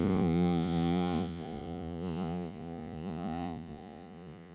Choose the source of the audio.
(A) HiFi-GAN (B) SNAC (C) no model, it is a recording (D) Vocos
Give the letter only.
D